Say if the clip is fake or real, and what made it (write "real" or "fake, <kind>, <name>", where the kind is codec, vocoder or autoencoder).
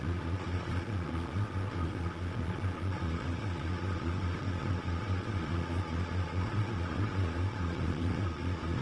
fake, vocoder, Vocos